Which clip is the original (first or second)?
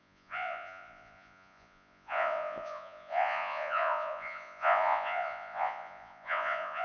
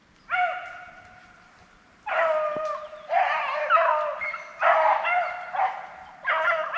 second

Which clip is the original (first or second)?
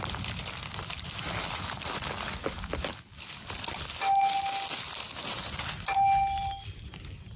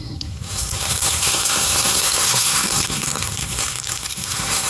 first